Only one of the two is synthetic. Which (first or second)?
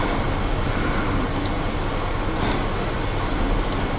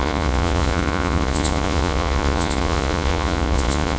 second